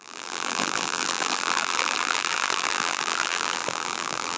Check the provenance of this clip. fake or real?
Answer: fake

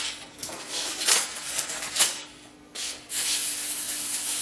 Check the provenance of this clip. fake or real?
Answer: fake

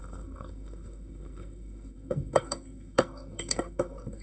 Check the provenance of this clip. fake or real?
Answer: fake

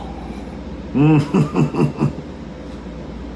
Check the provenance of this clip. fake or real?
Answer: real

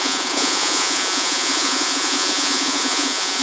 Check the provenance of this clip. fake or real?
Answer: fake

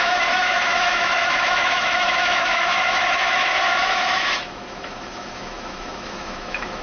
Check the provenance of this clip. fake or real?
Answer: fake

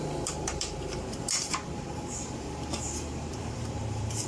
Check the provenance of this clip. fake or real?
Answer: fake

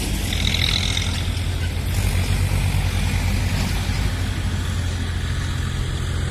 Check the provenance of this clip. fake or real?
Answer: real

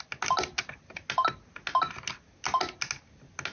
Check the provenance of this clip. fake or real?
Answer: real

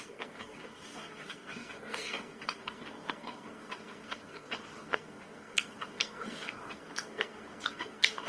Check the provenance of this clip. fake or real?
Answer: fake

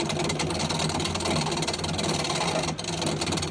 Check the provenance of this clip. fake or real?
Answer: real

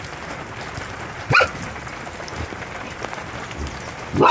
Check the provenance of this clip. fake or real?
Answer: real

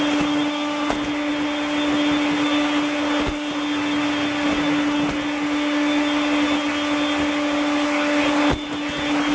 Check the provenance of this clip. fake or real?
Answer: real